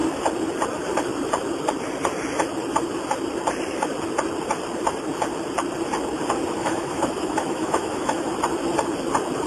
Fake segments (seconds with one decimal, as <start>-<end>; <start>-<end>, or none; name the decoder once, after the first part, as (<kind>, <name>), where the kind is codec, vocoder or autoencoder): 6.6-8.3 (autoencoder, DAC-VAE)